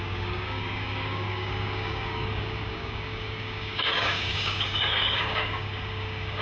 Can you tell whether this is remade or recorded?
remade